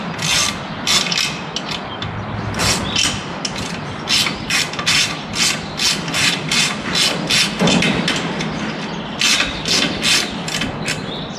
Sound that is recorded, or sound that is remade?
recorded